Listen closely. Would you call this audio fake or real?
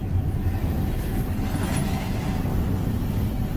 real